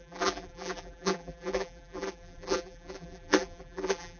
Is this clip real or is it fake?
fake